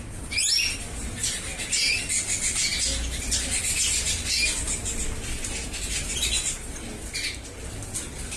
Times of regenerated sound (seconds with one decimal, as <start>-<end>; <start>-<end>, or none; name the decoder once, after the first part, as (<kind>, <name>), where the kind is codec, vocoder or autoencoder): none